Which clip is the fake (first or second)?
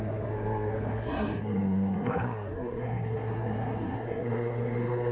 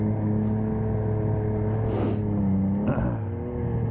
first